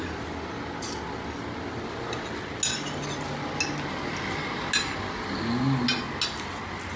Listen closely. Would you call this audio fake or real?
real